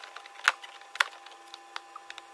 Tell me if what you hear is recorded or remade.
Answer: recorded